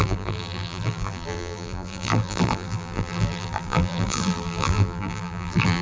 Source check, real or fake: fake